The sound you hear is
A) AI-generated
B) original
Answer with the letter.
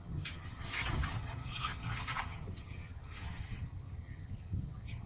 A